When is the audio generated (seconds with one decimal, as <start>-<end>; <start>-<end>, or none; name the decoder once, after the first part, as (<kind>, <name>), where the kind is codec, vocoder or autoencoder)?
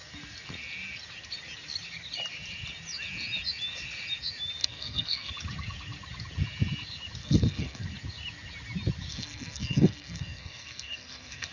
4.6-5.3 (codec, SNAC); 7.2-7.8; 9.1-11.5